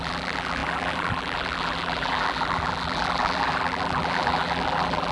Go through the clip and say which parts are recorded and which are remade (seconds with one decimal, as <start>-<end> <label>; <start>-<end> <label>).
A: 0.0-5.1 remade